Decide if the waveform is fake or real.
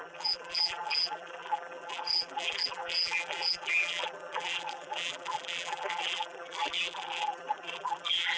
fake